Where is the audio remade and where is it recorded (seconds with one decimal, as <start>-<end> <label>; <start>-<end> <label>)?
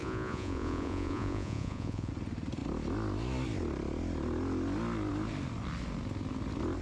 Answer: 0.0-2.1 remade; 2.1-6.8 recorded